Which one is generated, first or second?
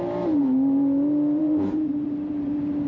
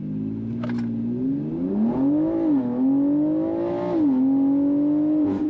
first